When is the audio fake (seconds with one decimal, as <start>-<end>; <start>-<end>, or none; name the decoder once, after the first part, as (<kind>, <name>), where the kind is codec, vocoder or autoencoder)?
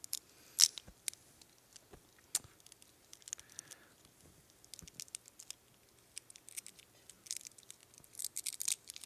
none